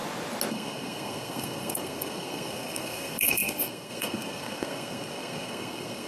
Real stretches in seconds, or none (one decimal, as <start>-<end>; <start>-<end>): 0.0-0.5